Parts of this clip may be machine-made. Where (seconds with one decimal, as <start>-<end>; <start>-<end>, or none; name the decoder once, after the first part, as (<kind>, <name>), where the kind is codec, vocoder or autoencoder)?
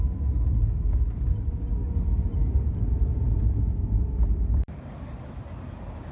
3.1-3.6 (vocoder, Vocos)